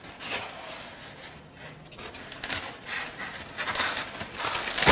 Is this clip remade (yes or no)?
no